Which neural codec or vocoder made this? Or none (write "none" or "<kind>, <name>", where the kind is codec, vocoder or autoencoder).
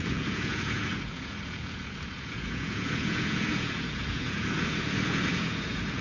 vocoder, Vocos